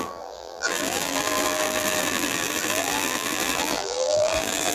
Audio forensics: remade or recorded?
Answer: remade